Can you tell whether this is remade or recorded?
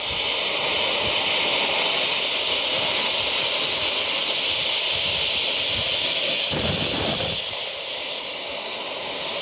recorded